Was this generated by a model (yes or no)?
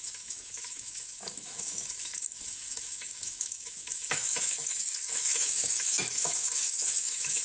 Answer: yes